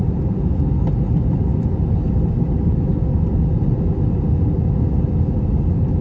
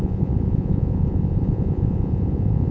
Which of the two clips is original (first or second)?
first